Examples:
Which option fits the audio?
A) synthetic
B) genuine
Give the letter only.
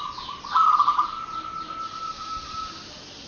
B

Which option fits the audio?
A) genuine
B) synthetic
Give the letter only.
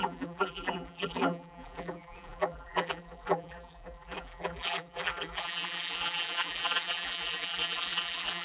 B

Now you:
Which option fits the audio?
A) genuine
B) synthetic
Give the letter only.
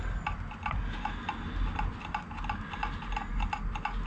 A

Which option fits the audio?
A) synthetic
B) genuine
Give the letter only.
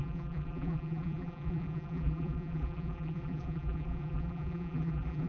A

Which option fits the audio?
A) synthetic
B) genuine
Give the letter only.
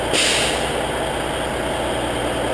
B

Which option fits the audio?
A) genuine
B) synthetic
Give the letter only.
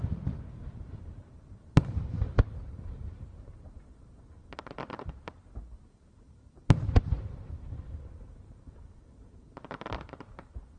B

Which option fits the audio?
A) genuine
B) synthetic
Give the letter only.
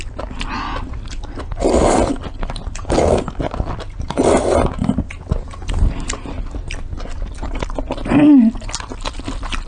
A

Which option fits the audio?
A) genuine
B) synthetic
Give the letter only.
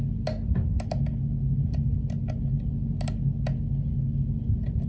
A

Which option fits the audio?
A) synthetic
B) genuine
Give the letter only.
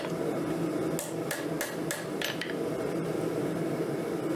B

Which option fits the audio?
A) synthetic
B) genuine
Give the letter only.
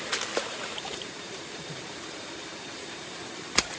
A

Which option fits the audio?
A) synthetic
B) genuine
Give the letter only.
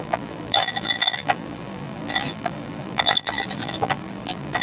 A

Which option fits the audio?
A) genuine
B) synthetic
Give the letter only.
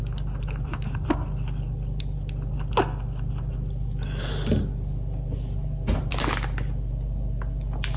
A